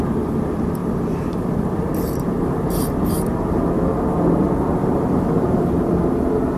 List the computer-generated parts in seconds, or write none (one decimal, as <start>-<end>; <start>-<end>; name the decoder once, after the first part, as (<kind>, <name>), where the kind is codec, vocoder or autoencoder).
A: 0.8-3.3 (vocoder, BigVGAN v2); 4.8-5.9